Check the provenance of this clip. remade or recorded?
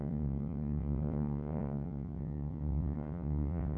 remade